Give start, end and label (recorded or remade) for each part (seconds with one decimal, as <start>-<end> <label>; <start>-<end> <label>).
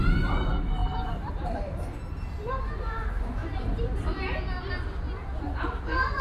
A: 0.0-6.2 recorded